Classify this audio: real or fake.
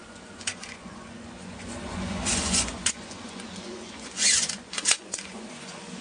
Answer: fake